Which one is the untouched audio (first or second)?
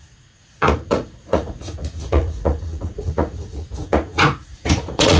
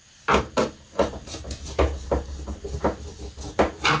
second